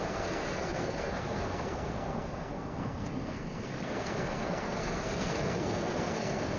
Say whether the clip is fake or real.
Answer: fake